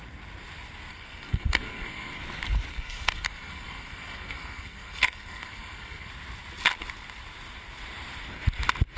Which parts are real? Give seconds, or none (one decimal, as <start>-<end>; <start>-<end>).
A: 0.0-0.9; 2.2-2.7; 6.1-9.0